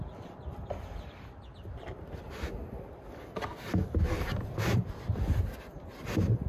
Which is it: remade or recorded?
recorded